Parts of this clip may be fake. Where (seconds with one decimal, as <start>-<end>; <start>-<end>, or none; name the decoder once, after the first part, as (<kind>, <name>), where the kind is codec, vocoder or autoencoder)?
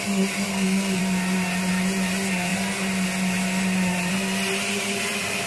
0.5-1.0 (codec, SNAC)